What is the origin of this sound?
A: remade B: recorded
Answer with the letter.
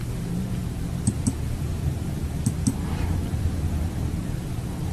A